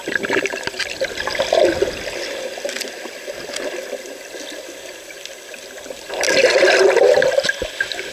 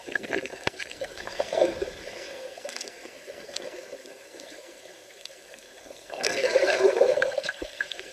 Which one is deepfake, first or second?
second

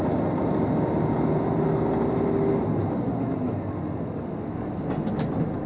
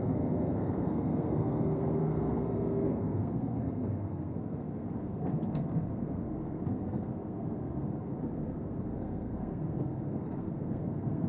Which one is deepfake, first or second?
second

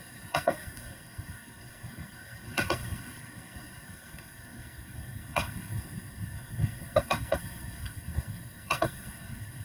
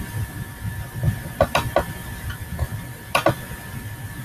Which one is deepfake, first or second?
first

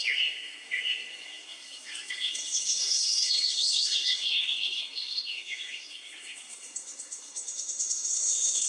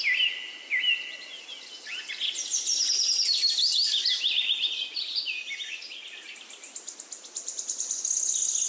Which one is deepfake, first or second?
first